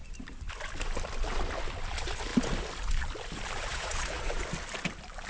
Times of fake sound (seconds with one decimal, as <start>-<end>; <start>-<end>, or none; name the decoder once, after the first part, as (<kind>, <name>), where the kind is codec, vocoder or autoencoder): 3.7-4.3 (vocoder, Vocos)

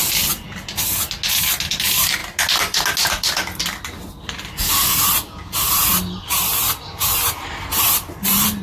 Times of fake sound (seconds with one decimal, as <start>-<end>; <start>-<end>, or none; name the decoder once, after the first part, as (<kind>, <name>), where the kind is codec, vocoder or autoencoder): none

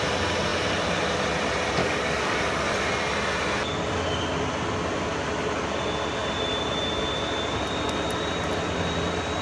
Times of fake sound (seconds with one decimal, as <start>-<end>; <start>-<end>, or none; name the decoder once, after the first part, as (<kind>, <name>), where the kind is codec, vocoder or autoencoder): 1.8-2.9 (codec, DAC)

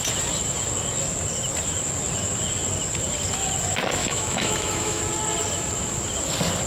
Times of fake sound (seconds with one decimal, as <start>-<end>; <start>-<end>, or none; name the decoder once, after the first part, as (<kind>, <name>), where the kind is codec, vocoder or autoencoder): 4.0-5.0 (autoencoder, DAC-VAE)

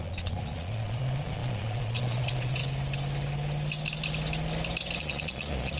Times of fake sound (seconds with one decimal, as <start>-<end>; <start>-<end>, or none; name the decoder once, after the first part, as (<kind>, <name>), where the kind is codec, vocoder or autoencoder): 0.0-2.6 (vocoder, Vocos); 5.0-5.8